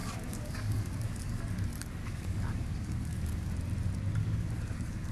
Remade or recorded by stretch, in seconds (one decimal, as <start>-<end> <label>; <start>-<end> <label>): 0.0-1.4 remade; 1.4-2.0 recorded; 2.0-3.5 remade; 3.5-4.2 recorded; 4.2-5.1 remade